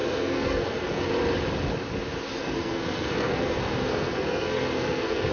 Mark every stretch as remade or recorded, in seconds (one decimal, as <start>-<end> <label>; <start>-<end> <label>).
0.0-1.1 remade; 1.1-2.4 recorded; 2.4-5.3 remade